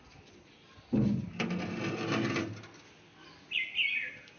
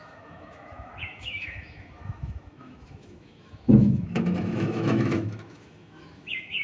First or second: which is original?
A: first